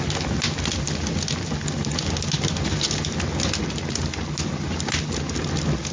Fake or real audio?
real